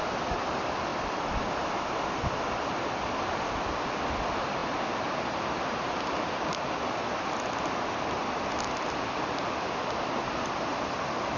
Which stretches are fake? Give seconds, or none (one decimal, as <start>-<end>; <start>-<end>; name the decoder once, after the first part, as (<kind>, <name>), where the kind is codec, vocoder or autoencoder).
none